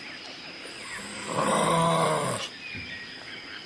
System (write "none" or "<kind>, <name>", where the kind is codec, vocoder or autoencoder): none